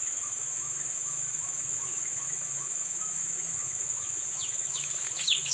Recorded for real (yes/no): no